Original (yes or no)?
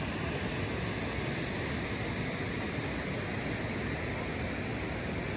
yes